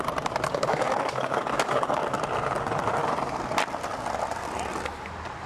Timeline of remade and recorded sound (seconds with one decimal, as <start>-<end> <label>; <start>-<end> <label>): 0.0-0.5 recorded; 0.5-2.0 remade; 2.0-5.5 recorded